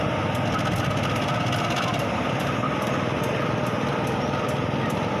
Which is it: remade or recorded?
recorded